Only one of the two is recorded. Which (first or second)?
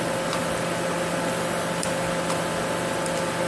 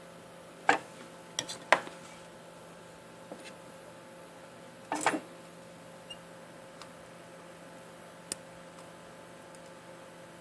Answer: second